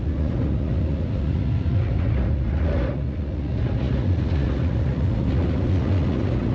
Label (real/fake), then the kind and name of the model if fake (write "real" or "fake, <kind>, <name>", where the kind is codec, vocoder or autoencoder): fake, vocoder, Vocos